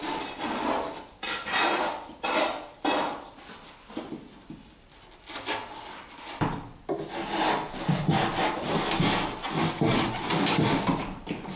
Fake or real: real